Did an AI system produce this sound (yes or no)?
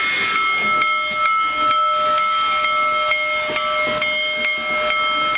no